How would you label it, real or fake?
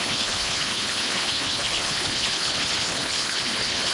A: fake